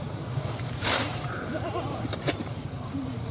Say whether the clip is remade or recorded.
remade